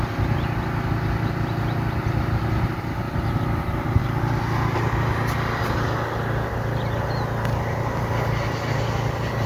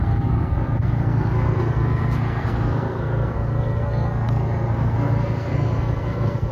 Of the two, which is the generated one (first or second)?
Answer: second